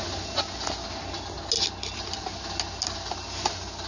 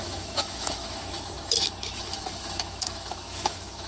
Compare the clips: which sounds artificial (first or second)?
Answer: second